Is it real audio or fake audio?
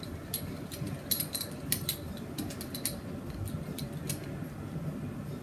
real